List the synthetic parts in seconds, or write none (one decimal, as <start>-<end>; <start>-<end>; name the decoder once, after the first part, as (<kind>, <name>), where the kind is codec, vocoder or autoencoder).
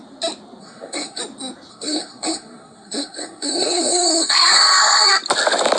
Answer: 0.6-1.2 (codec, SNAC); 1.7-5.1